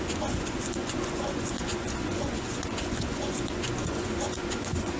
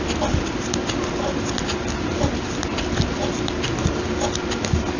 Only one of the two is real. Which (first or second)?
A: second